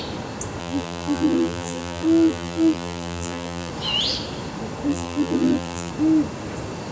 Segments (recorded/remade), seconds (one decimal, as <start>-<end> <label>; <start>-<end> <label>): 0.0-0.6 recorded; 0.6-3.7 remade; 3.7-4.9 recorded; 4.9-5.9 remade; 5.9-6.9 recorded

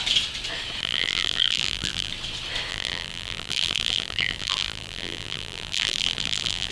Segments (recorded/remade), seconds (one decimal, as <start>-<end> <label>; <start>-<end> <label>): 0.0-0.8 recorded; 0.8-2.1 remade; 2.1-2.7 recorded; 2.7-6.7 remade

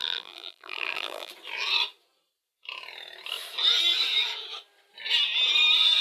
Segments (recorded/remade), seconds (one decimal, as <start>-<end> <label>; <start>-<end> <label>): 0.0-1.3 remade; 1.3-6.0 recorded